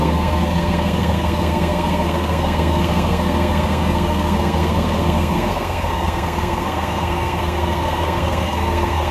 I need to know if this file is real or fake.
fake